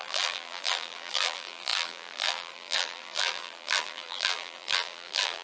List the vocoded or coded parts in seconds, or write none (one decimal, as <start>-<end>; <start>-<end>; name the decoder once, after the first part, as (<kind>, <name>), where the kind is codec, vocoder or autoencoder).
0.0-5.4 (vocoder, BigVGAN v2)